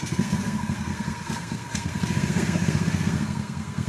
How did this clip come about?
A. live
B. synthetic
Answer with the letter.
B